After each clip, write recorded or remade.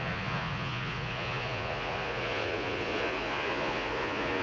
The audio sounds remade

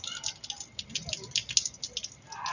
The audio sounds recorded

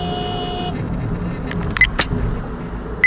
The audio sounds recorded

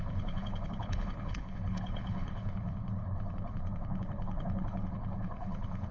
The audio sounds remade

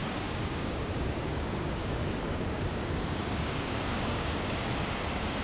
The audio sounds remade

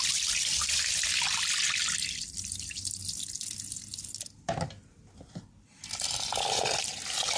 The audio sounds recorded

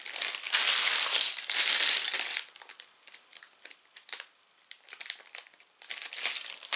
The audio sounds recorded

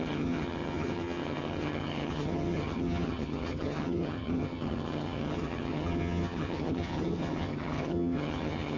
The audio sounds remade